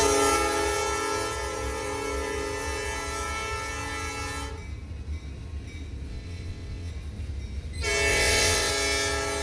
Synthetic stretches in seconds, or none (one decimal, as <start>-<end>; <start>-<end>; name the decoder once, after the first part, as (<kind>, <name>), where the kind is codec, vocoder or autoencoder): 6.1-6.9 (vocoder, WaveNeXt); 8.1-8.7